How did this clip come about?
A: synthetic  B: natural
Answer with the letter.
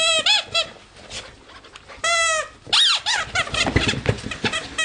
B